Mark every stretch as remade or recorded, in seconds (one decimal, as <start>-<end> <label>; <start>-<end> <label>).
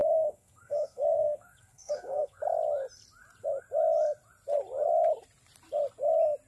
0.0-2.4 remade; 2.4-6.5 recorded